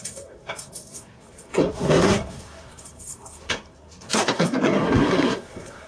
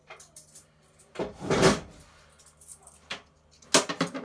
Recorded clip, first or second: second